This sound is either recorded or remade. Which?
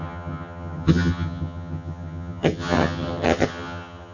remade